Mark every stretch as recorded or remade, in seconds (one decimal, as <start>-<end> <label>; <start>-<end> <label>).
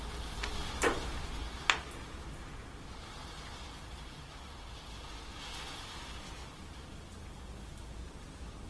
0.0-8.7 recorded